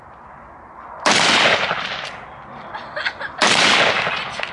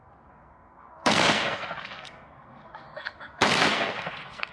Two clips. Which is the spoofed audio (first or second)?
second